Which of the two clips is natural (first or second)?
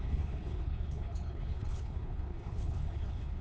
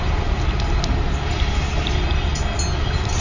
second